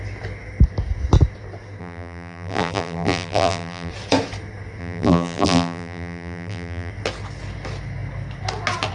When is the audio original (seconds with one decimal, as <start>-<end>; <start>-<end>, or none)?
0.0-1.8; 3.9-4.8; 6.9-8.9

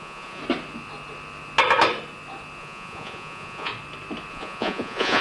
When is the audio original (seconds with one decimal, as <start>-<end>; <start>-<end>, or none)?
0.4-2.6; 3.7-4.3

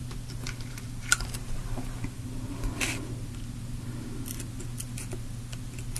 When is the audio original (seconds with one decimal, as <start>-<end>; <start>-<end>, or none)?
0.0-6.0

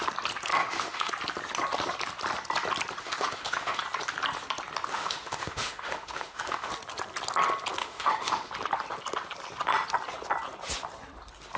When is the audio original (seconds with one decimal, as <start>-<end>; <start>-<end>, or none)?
0.0-0.6; 1.1-3.0; 3.8-4.9; 6.7-7.8; 8.5-11.6

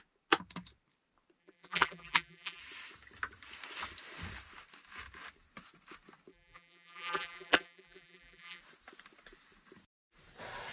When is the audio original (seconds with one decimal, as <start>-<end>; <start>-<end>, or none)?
0.0-1.4; 2.6-6.3; 8.6-10.7

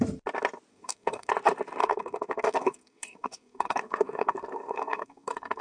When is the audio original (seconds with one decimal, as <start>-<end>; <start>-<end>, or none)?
0.0-0.7; 1.3-1.8

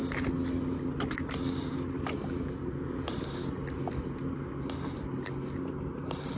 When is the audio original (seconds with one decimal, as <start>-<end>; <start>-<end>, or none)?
0.0-6.4

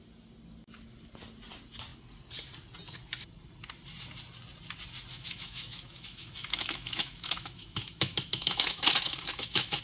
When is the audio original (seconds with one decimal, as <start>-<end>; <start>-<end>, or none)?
0.0-5.1